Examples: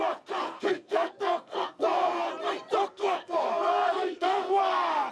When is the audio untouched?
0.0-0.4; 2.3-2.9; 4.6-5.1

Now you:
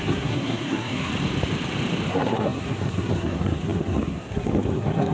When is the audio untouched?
1.1-2.1

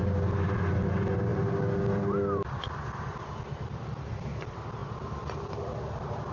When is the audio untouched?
0.0-6.3

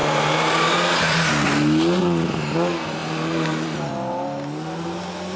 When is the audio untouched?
1.3-3.0; 3.9-5.4